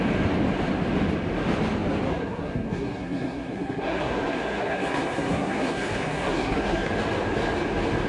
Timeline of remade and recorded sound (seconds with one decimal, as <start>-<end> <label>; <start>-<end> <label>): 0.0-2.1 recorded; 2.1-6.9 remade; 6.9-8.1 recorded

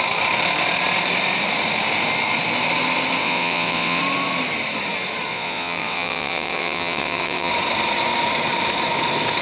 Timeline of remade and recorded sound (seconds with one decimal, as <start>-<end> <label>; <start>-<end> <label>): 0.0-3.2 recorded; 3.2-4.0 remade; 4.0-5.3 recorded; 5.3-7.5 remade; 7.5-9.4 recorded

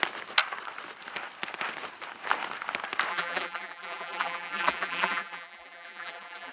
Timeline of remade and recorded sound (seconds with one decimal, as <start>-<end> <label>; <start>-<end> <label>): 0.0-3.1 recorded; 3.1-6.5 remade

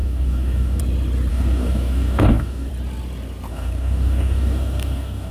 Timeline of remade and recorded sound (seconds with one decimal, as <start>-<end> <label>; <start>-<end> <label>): 0.0-0.8 remade; 0.8-1.3 recorded; 1.3-2.7 remade; 2.7-3.5 recorded; 3.5-5.3 remade